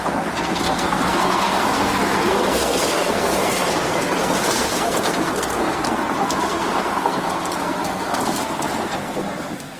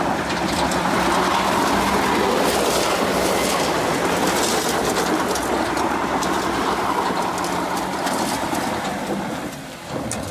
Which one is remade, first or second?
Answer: first